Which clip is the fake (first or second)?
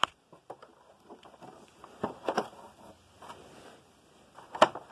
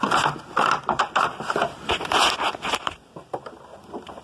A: second